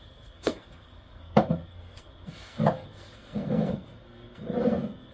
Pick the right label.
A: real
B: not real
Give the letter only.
B